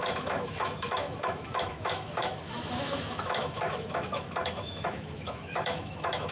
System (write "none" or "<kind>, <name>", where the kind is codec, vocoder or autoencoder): autoencoder, DAC-VAE